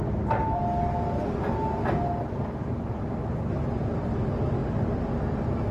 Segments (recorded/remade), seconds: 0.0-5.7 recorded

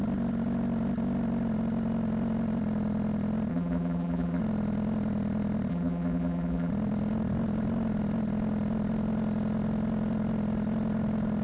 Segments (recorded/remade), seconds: 0.0-3.5 recorded; 3.5-4.4 remade; 4.4-5.7 recorded; 5.7-6.7 remade; 6.7-11.4 recorded

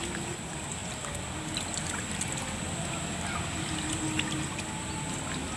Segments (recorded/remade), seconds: 0.0-0.8 recorded; 0.8-4.2 remade; 4.2-5.6 recorded

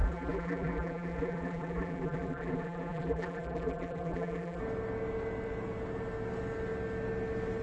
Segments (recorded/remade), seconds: 0.0-4.6 remade; 4.6-7.6 recorded

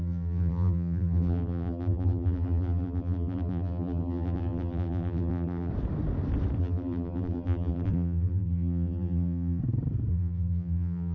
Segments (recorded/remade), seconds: 0.0-5.7 remade; 5.7-6.6 recorded; 6.6-9.6 remade; 9.6-10.1 recorded; 10.1-11.1 remade